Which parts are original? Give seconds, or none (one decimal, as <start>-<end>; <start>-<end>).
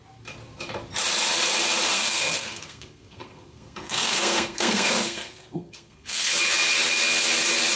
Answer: 0.0-1.9; 6.3-7.8